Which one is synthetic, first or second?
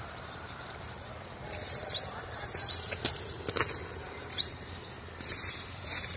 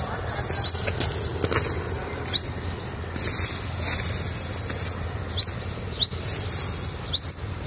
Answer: first